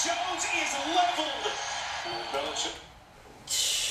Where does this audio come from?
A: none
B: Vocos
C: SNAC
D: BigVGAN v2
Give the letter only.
D